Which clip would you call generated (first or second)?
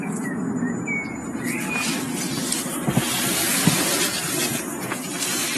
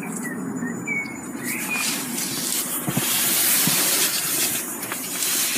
second